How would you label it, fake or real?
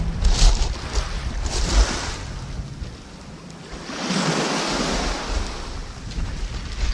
fake